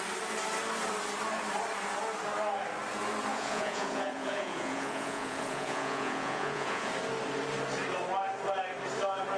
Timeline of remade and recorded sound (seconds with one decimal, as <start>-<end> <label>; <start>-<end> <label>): 0.0-3.3 recorded; 3.3-6.9 remade; 6.9-9.4 recorded